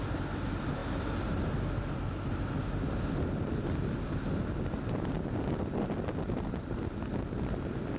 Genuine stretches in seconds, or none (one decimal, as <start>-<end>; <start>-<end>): 0.0-8.0